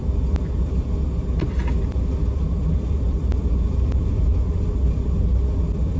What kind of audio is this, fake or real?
real